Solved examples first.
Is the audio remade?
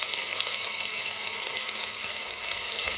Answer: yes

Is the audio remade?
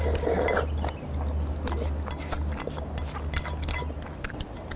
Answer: no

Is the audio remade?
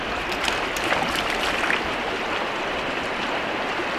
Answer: no